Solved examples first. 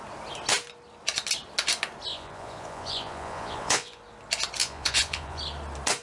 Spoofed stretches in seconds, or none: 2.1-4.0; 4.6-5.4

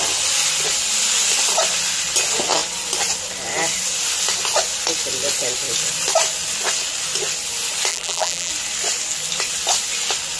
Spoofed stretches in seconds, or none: 7.9-8.5

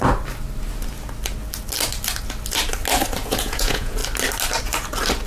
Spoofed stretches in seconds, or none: 3.2-4.0

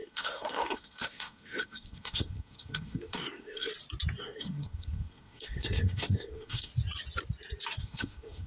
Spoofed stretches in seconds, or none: 0.0-3.7; 4.2-6.7; 7.8-8.5

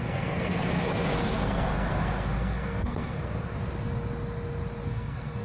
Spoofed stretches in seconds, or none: 0.0-3.5; 4.9-5.4